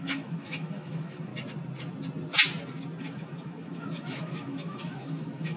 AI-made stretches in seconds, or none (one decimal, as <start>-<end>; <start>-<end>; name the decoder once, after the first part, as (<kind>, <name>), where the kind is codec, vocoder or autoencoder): 0.0-1.3 (autoencoder, DAC-VAE); 3.0-5.6